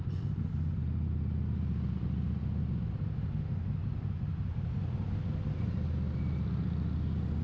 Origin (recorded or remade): recorded